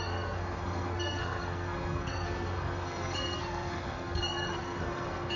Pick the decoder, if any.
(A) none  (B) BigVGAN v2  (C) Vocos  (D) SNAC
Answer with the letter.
D